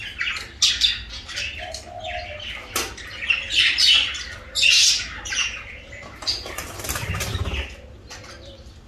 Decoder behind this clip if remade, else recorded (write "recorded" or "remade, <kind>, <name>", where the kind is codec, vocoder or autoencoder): recorded